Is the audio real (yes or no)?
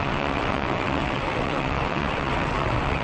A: no